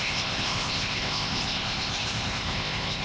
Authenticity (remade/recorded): remade